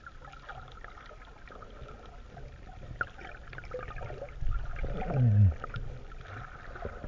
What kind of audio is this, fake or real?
real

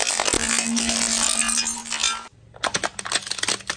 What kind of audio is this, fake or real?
real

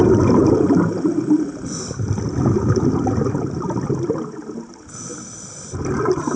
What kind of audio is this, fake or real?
real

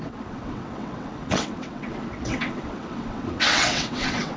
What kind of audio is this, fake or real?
fake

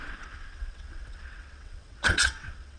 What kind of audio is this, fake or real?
fake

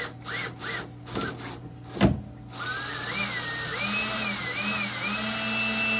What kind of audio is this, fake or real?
real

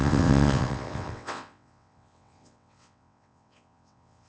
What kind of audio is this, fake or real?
fake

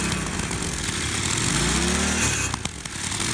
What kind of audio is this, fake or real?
real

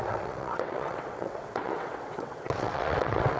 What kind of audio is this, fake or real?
fake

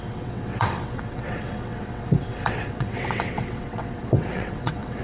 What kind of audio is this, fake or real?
fake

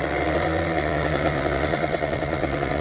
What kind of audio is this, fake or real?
fake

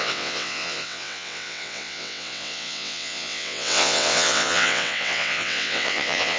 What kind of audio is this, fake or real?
fake